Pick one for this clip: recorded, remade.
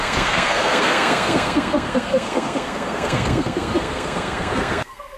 remade